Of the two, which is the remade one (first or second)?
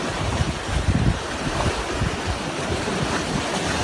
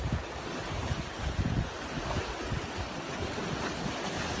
first